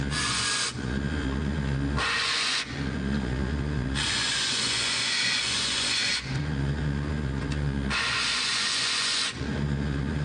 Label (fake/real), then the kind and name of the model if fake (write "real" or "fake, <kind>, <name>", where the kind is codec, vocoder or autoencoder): fake, vocoder, Vocos